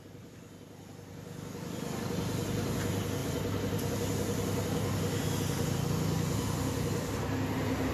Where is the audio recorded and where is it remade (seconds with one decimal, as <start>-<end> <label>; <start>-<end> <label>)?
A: 0.0-7.9 recorded